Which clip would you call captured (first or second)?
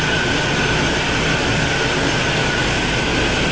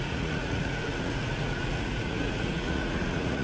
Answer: first